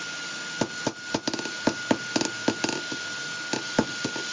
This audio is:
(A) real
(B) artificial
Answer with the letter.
A